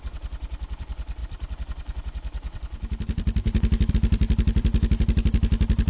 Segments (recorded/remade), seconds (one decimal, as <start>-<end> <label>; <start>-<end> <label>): 0.0-4.7 remade; 4.7-5.9 recorded